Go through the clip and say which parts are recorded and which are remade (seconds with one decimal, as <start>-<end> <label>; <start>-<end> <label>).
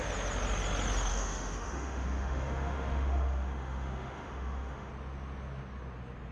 0.0-1.1 recorded; 1.1-4.9 remade; 4.9-6.3 recorded